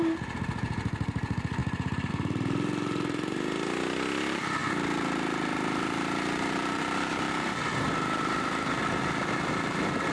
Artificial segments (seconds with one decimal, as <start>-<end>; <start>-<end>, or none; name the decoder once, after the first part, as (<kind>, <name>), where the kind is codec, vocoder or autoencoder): none